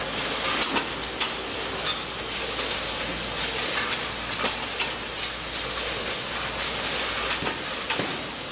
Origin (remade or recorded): recorded